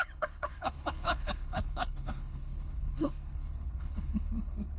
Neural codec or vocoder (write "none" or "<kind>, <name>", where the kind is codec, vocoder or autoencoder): codec, HILCodec